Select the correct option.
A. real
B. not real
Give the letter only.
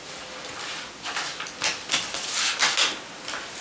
A